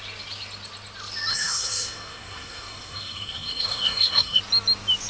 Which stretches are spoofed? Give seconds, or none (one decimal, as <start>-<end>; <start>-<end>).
1.3-4.4